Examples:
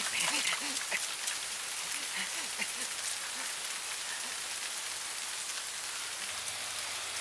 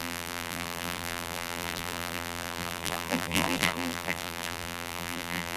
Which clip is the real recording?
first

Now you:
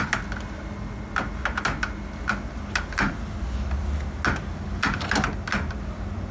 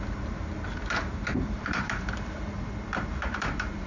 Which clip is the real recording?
first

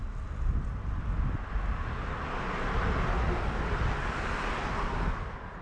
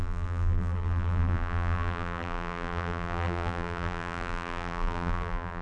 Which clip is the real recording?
first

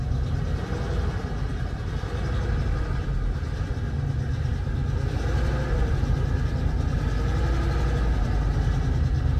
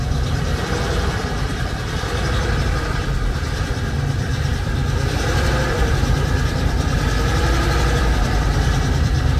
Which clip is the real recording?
first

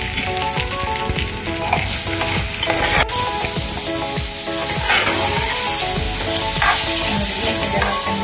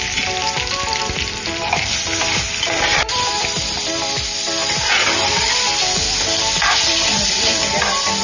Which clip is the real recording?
first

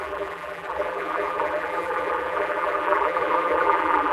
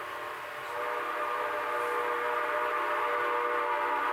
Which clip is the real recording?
second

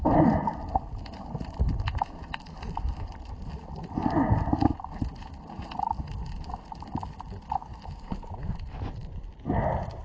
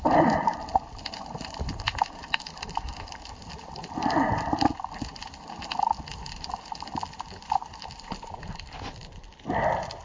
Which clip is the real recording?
first